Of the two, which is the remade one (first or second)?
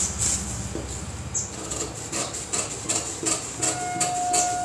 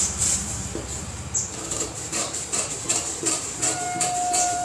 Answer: second